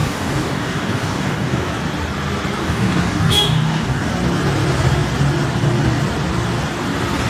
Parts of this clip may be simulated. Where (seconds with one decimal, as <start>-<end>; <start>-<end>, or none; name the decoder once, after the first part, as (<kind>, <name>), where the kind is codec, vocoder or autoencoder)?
0.0-1.7 (codec, DAC); 2.6-4.1